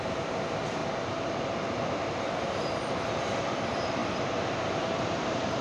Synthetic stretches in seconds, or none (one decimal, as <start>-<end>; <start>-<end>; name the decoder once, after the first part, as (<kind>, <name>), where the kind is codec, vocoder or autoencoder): 0.0-0.8 (vocoder, BigVGAN v2); 1.8-4.0; 4.6-5.6